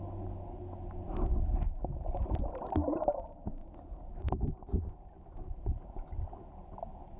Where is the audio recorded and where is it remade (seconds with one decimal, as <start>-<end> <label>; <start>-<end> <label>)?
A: 0.0-7.2 recorded